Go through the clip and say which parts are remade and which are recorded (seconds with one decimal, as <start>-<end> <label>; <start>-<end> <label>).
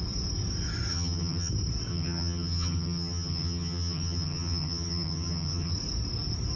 0.0-0.9 recorded; 0.9-1.5 remade; 1.5-1.9 recorded; 1.9-5.7 remade; 5.7-6.6 recorded